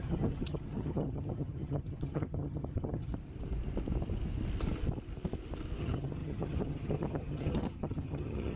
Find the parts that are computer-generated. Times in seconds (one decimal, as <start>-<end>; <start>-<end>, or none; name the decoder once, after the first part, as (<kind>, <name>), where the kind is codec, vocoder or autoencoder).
0.0-3.1 (vocoder, HiFi-GAN); 5.8-8.6